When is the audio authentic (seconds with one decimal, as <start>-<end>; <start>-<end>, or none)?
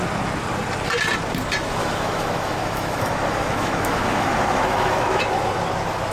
0.0-1.8; 5.2-6.1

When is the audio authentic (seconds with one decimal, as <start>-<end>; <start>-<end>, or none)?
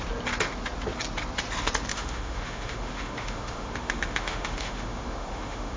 0.0-1.9